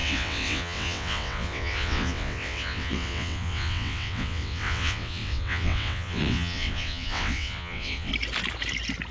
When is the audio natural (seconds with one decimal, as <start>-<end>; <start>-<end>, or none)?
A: 8.1-9.1